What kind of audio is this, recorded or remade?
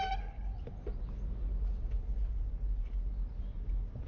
recorded